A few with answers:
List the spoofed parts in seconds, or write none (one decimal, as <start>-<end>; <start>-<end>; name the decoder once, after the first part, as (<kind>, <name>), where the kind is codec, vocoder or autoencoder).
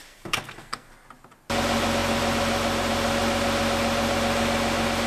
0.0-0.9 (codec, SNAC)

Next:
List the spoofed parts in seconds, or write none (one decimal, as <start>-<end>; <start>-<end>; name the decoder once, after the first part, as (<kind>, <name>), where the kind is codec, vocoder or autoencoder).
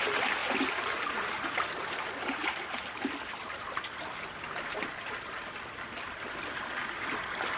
none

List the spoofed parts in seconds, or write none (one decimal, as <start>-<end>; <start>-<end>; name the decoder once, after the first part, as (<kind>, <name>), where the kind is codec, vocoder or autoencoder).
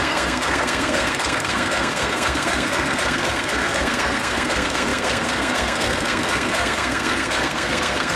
0.0-8.2 (codec, SNAC)